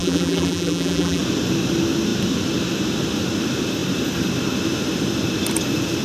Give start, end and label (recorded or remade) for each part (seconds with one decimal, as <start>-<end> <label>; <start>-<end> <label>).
0.0-1.2 remade; 1.2-6.0 recorded